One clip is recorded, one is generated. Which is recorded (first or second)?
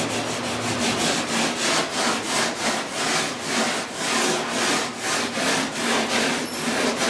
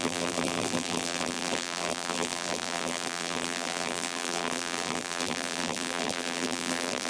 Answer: first